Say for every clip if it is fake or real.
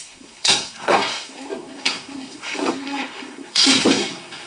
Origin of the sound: fake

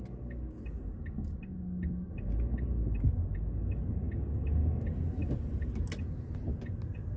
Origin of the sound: real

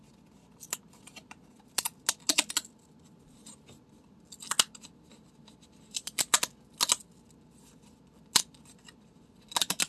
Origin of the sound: real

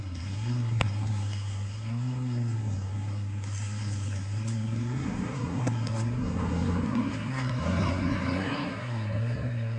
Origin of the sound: fake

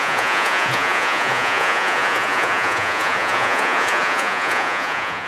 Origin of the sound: fake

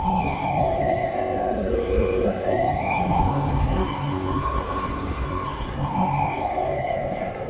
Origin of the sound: fake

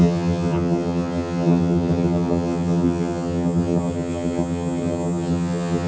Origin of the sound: fake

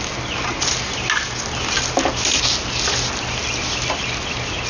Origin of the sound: real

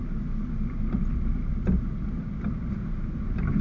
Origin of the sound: real